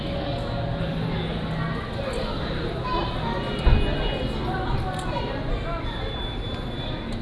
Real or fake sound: real